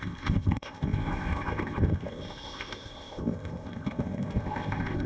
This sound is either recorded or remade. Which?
remade